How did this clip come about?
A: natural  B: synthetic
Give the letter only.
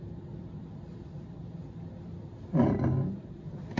A